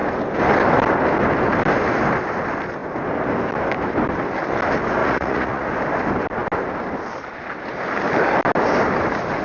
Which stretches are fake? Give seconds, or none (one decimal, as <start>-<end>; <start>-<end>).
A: 5.0-5.7